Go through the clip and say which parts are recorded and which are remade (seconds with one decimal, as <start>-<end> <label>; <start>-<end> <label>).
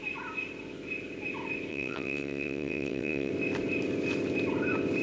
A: 0.0-1.7 recorded; 1.7-3.3 remade; 3.3-5.0 recorded